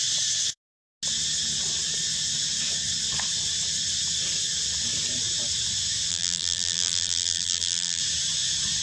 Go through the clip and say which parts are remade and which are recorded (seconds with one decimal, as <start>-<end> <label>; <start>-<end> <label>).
0.0-6.1 recorded; 6.1-8.0 remade; 8.0-8.8 recorded